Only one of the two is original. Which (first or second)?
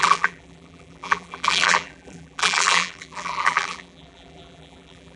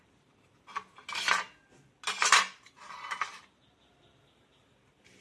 second